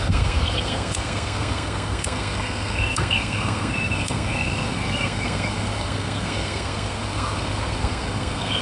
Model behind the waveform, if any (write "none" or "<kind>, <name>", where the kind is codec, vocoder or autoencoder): codec, SNAC